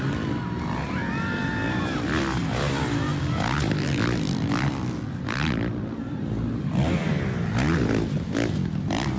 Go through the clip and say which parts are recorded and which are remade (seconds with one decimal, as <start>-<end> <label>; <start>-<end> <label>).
0.0-9.2 recorded